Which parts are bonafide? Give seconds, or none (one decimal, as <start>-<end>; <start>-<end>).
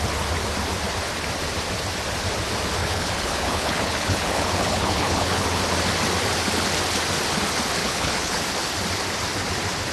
0.0-2.8; 5.6-7.8; 8.4-9.9